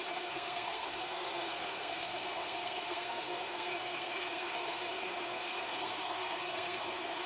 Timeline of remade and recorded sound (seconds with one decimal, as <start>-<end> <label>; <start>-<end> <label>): 0.0-7.3 remade